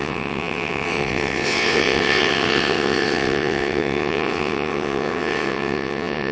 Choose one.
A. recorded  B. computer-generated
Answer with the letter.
B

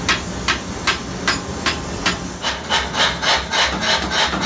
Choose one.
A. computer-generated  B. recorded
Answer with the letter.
B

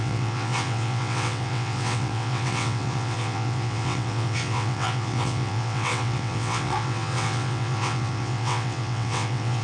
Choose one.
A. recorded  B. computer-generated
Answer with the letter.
B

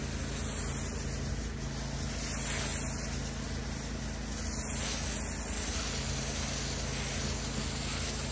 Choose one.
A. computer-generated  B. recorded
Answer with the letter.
B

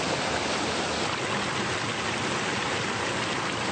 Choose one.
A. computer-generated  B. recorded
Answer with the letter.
B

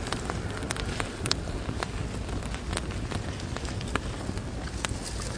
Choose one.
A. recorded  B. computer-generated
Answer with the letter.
A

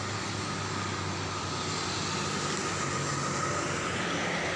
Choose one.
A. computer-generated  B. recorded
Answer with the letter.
B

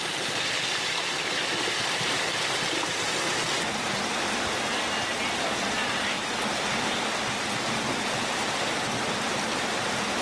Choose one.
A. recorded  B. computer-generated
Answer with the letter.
A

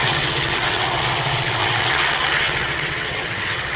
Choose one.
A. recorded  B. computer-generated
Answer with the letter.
B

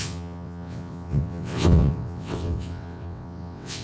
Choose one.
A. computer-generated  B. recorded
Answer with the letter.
A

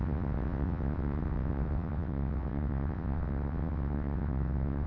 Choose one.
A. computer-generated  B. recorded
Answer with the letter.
A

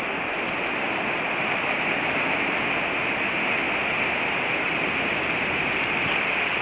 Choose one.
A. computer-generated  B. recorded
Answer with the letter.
B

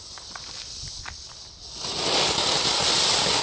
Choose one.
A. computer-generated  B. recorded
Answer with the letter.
B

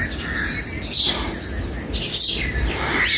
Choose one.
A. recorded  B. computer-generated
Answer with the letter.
A